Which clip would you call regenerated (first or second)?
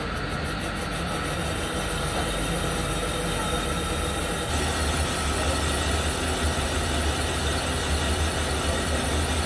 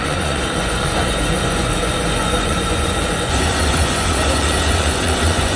second